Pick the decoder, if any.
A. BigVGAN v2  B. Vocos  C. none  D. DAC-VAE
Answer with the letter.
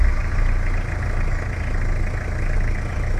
C